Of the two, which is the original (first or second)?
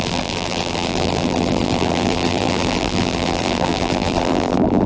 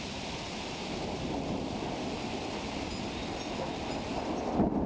second